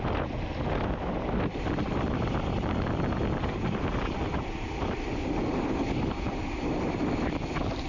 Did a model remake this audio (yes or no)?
no